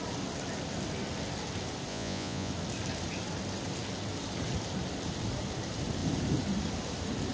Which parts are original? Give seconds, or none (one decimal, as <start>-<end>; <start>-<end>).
0.0-1.9; 2.5-7.3

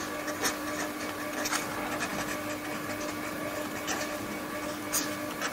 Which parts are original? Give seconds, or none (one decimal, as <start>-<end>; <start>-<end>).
0.0-5.5

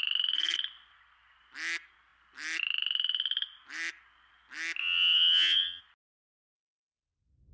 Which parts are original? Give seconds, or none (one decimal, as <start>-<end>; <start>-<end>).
0.0-4.8; 5.8-7.5

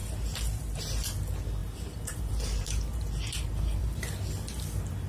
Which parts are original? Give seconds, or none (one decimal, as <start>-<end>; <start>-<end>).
0.8-1.6; 3.8-5.1